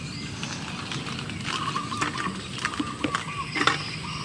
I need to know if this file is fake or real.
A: real